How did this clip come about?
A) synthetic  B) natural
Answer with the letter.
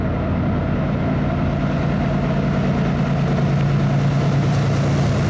B